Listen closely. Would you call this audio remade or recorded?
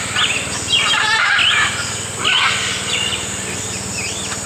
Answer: recorded